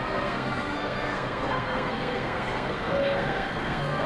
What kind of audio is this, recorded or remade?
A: remade